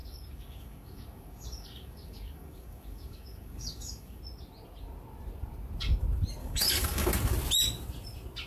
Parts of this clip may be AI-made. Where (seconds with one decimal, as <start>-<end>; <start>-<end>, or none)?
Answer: 0.0-4.2; 6.4-7.1